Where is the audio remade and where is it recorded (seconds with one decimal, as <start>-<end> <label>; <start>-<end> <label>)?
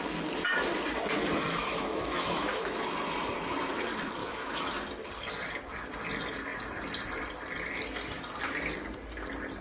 0.0-1.6 recorded; 1.6-2.7 remade; 2.7-4.2 recorded; 4.2-4.7 remade; 4.7-9.6 recorded